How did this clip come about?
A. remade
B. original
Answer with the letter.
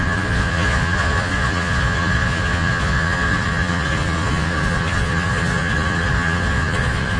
A